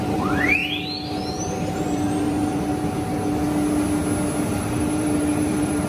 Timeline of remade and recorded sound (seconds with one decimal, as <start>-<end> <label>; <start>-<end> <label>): 0.0-0.6 remade; 0.6-1.4 recorded; 1.4-2.7 remade; 2.7-4.5 recorded; 4.5-5.9 remade